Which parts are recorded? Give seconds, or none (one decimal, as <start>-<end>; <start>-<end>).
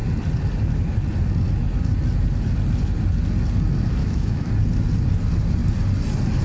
0.0-4.0; 4.5-6.4